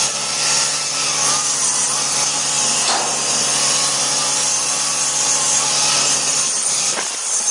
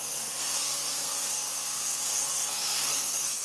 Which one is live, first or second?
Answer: first